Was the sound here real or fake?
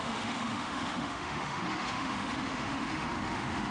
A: fake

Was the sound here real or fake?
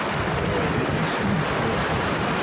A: real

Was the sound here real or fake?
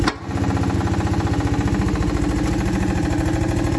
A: real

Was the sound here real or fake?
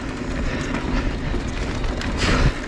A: real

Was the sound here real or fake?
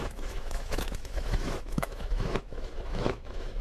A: fake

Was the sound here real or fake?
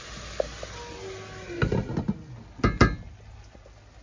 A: real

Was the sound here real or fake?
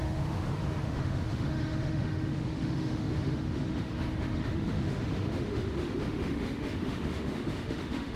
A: fake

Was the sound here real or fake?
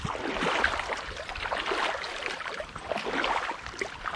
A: real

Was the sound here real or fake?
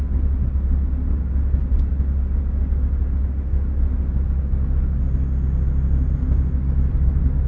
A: real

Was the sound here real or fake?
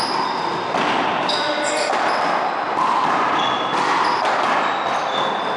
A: real